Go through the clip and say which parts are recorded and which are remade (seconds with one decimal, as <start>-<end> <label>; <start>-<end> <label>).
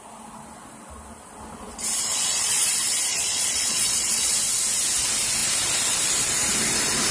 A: 0.0-2.0 recorded; 2.0-2.7 remade; 2.7-3.1 recorded; 3.1-4.4 remade; 4.4-7.1 recorded